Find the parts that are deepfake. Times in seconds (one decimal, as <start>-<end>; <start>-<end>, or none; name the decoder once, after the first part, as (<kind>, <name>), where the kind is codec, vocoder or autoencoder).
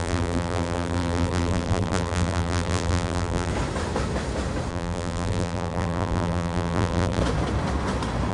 0.0-3.5 (vocoder, BigVGAN v2); 4.7-7.2